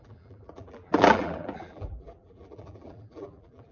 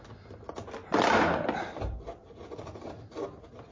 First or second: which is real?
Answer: second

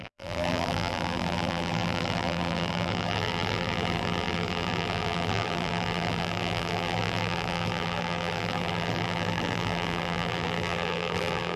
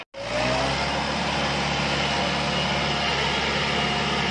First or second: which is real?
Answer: second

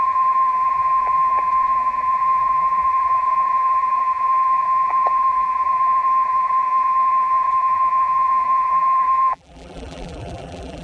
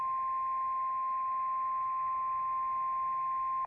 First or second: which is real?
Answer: second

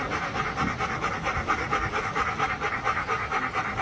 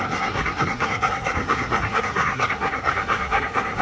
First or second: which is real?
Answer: first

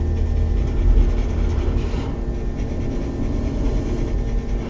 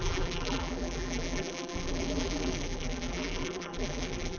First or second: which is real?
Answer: first